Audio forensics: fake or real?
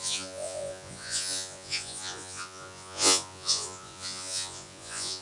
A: fake